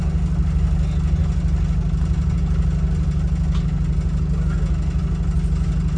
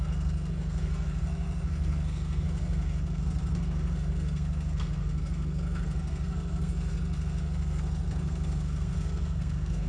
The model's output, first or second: second